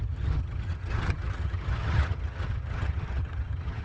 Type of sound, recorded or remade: remade